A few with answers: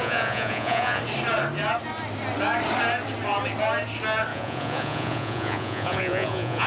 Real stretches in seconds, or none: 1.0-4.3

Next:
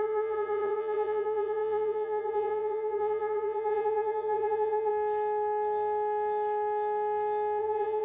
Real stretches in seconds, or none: 4.9-7.6

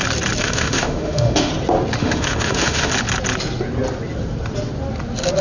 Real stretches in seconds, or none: 0.0-0.4; 1.5-2.0; 2.9-5.4